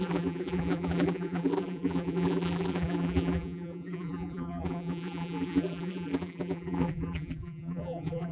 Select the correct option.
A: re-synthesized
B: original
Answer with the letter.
A